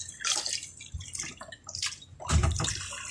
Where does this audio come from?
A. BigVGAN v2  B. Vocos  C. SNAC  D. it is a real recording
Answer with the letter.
D